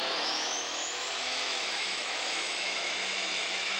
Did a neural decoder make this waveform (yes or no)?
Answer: yes